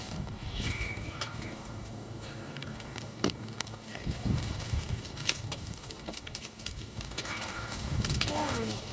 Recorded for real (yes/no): no